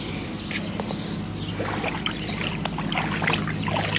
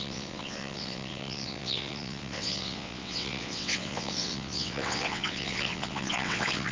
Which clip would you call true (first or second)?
first